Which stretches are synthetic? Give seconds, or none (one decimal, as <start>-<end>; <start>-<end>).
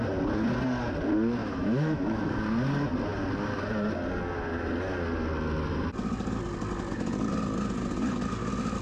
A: 1.4-2.4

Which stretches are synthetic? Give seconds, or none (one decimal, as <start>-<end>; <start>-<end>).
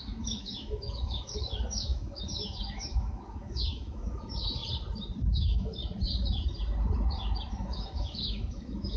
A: 0.0-4.6; 5.2-5.8; 7.5-9.0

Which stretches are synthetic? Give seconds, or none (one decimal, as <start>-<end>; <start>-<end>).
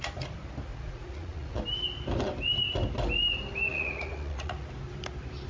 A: 0.7-1.6; 3.7-4.7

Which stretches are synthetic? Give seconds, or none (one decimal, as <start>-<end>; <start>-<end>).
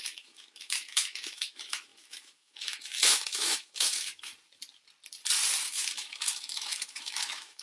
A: 0.0-4.3; 5.6-7.6